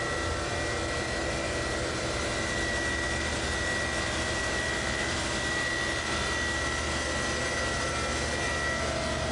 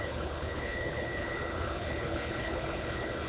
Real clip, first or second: first